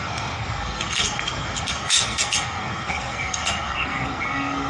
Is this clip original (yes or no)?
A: no